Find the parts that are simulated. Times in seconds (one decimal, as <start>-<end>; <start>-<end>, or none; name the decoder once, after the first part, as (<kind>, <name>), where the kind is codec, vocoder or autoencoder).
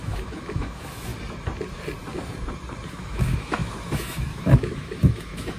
0.0-1.1 (autoencoder, DAC-VAE); 2.9-5.6